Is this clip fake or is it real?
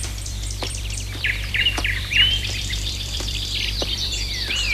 fake